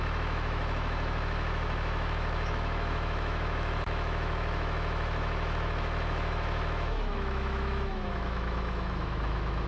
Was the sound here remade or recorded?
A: remade